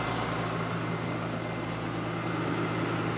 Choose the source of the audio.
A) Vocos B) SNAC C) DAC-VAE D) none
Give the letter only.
D